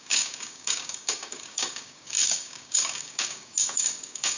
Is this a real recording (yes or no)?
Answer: no